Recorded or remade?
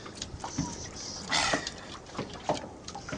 remade